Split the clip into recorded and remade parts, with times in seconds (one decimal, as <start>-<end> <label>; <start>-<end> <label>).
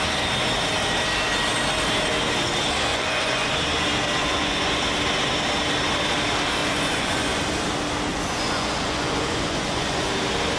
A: 0.0-2.9 recorded; 2.9-3.5 remade; 3.5-4.2 recorded; 4.2-4.8 remade; 4.8-6.6 recorded; 6.6-7.4 remade; 7.4-8.1 recorded; 8.1-10.1 remade; 10.1-10.6 recorded